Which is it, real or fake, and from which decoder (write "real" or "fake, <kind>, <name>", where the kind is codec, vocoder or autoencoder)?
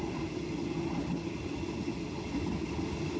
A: real